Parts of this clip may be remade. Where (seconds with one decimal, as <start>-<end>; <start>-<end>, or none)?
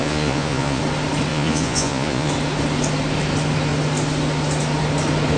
0.0-0.8; 1.3-2.3